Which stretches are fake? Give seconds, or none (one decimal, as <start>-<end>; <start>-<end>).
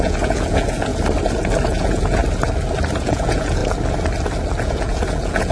0.0-0.9; 1.6-2.2; 3.0-3.6; 4.6-5.5